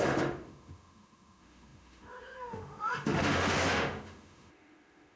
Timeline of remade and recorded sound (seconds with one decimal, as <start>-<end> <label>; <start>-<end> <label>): 0.0-5.2 remade